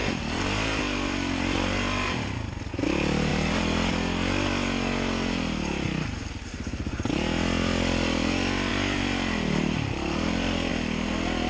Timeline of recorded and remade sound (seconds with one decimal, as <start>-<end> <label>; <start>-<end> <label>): 0.0-2.7 remade; 2.7-8.7 recorded; 8.7-10.7 remade; 10.7-11.5 recorded